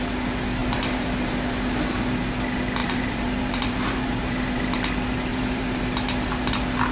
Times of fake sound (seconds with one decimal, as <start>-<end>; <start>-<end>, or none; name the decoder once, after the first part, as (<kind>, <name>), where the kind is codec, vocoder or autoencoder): 0.6-1.3 (vocoder, BigVGAN v2); 2.8-4.6; 5.3-5.8